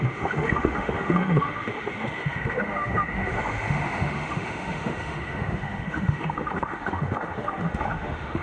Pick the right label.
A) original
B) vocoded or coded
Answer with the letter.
B